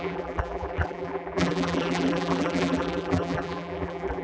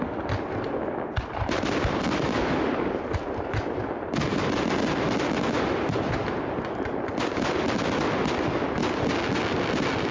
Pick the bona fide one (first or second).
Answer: second